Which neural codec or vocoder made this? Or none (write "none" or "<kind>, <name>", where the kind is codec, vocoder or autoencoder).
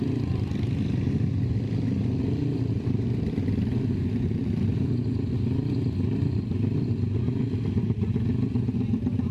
none